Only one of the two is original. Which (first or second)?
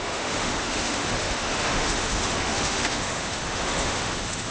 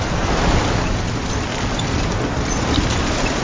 second